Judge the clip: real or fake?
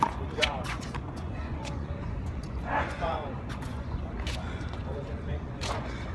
fake